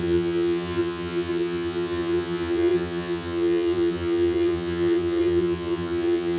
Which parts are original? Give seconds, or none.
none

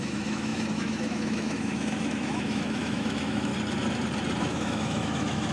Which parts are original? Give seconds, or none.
3.5-4.4